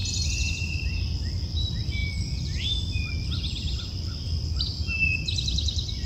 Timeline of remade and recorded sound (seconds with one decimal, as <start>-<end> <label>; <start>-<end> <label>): 0.0-1.0 remade; 1.0-6.1 recorded

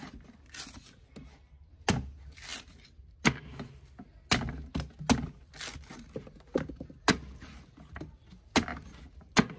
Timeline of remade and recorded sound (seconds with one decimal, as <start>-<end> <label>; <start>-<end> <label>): 0.0-9.6 recorded

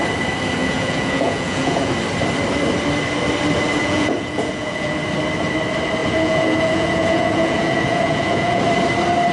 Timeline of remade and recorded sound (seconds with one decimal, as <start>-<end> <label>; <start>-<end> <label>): 0.0-0.6 recorded; 0.6-1.9 remade; 1.9-3.8 recorded; 3.8-4.9 remade; 4.9-6.0 recorded; 6.0-8.6 remade; 8.6-9.3 recorded

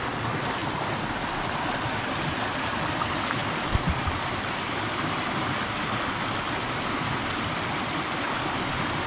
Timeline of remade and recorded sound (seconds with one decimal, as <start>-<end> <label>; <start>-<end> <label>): 0.0-9.1 recorded

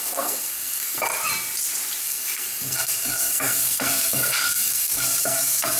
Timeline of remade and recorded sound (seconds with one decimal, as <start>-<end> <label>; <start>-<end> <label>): 0.0-1.1 remade; 1.1-2.0 recorded; 2.0-5.8 remade